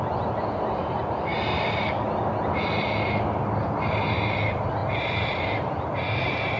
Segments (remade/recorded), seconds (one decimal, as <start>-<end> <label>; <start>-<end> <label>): 0.0-6.6 recorded